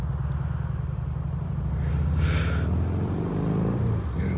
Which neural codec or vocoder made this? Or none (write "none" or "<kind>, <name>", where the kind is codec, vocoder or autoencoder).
none